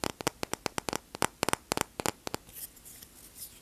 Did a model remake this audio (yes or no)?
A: no